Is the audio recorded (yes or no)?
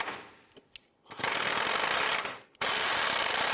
yes